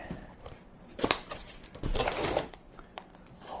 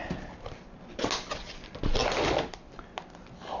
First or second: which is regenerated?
first